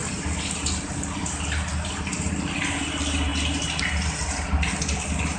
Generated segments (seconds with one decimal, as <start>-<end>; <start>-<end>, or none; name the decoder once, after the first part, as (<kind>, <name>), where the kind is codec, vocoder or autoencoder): 1.4-5.4 (vocoder, BigVGAN v2)